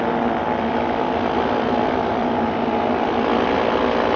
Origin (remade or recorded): recorded